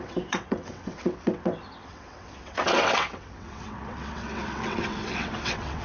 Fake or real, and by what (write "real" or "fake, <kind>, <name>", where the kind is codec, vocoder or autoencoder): fake, vocoder, WaveNeXt